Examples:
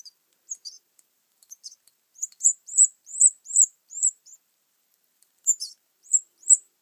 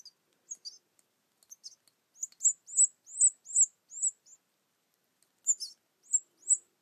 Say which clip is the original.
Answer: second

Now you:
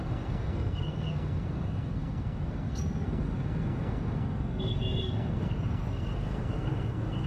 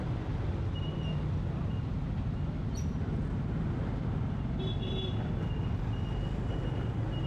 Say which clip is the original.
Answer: second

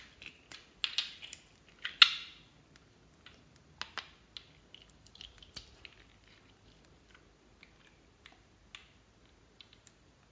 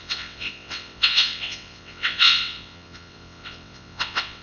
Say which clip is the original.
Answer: first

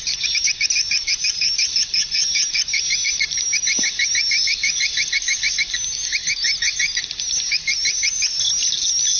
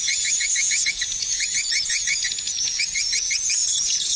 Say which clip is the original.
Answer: first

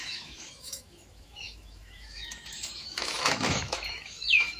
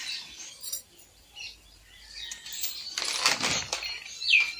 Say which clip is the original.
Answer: second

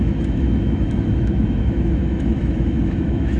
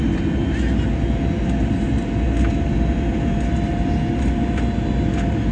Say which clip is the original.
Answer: second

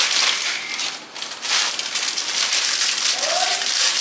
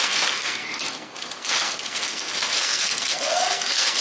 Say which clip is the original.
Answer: first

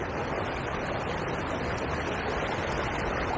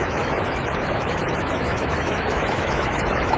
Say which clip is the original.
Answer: first